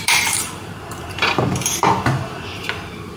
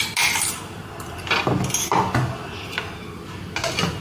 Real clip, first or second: second